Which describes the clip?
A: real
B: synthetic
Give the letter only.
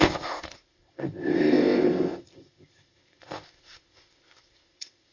B